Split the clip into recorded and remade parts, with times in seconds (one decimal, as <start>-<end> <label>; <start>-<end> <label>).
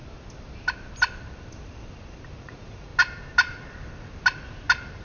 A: 0.0-2.4 recorded; 2.4-2.9 remade; 2.9-5.0 recorded